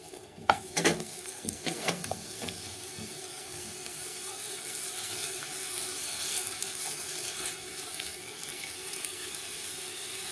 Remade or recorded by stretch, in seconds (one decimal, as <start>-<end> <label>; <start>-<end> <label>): 0.0-10.3 remade